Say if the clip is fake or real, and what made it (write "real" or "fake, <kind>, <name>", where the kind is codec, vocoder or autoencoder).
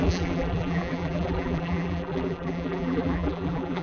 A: fake, vocoder, BigVGAN v2